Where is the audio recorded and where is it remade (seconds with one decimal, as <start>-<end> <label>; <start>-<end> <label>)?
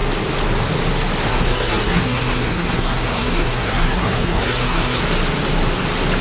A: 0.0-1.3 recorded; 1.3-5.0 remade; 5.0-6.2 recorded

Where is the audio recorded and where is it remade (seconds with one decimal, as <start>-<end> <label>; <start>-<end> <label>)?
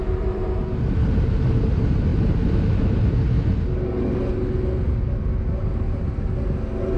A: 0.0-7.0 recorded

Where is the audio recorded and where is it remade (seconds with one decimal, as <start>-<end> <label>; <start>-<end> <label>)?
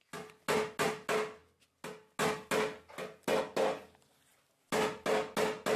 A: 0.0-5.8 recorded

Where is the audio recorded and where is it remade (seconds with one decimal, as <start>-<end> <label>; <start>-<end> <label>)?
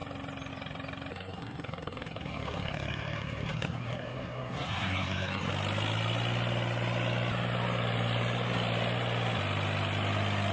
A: 0.0-1.1 recorded; 1.1-5.5 remade; 5.5-10.5 recorded